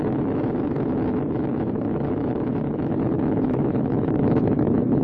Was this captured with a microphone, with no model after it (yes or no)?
no